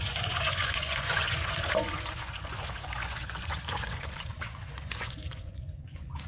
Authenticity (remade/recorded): remade